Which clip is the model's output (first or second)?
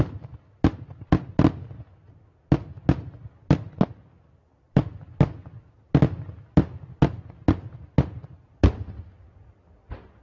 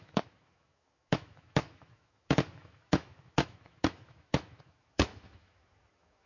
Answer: second